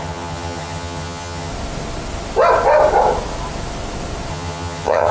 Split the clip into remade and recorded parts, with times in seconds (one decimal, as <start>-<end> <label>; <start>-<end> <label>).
0.0-1.5 remade; 1.5-4.3 recorded; 4.3-5.1 remade